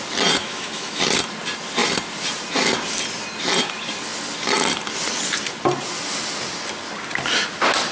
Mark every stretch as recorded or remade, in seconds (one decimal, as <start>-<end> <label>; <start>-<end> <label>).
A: 0.0-0.4 recorded; 0.4-1.0 remade; 1.0-7.9 recorded